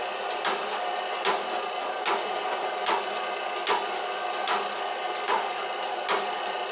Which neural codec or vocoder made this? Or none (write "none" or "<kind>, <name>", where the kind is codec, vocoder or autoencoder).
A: none